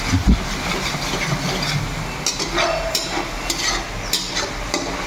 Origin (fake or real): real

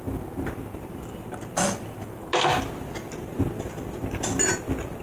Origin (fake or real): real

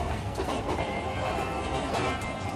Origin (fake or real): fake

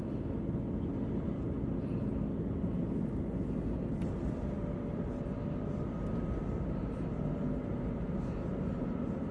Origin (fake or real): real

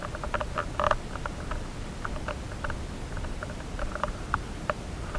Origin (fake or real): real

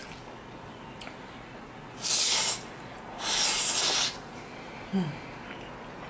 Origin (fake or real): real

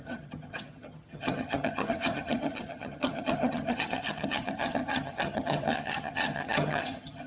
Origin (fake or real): fake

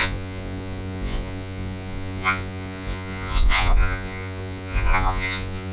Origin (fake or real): fake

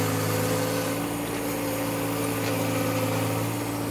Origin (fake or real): real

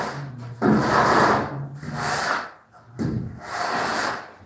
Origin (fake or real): real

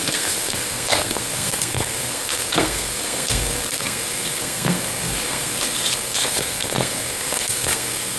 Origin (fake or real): fake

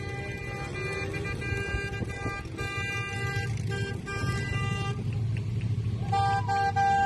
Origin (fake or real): real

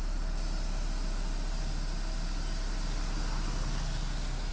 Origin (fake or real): real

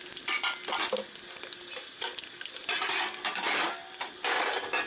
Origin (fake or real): real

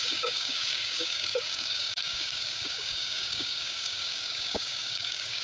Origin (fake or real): fake